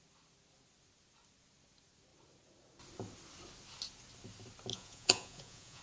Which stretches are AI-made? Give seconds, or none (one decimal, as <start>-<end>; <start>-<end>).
4.7-5.8